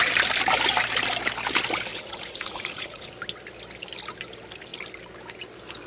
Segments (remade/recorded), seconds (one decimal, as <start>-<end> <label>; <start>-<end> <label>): 0.0-1.9 recorded; 1.9-3.1 remade; 3.1-5.9 recorded